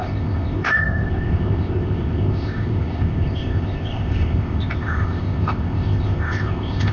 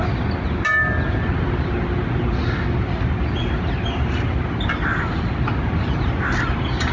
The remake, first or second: first